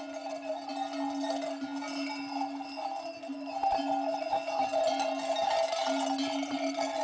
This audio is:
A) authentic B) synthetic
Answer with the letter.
A